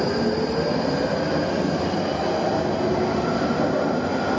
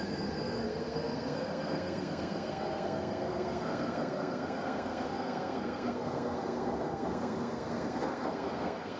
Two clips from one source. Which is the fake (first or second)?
second